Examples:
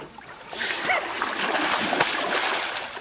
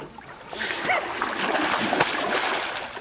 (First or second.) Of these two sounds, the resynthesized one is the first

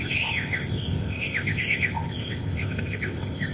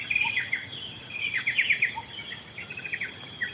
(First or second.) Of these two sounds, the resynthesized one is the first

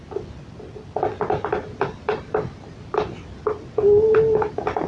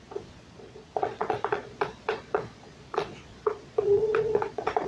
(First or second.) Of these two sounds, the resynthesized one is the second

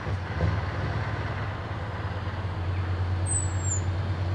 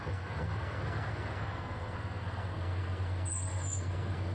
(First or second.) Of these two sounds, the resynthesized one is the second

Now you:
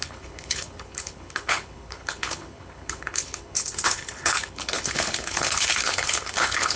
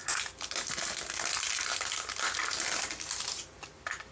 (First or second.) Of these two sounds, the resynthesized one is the first